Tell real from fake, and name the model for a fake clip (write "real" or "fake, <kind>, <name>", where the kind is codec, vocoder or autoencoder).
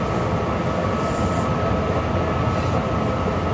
real